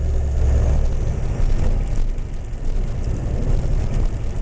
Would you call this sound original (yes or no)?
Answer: yes